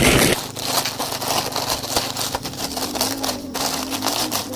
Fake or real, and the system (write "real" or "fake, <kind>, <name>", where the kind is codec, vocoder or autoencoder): real